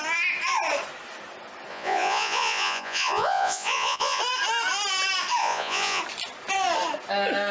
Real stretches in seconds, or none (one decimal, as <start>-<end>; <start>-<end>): 0.0-1.7; 4.2-5.4; 6.0-7.5

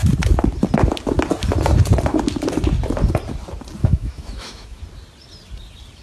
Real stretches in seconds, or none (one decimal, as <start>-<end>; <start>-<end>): 0.0-3.8; 4.8-6.0

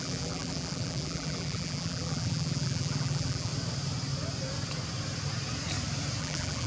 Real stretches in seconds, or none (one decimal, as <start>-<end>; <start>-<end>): 3.5-6.2

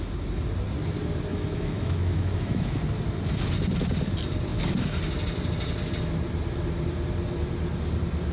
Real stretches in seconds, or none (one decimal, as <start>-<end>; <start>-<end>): 0.0-1.3; 2.8-8.3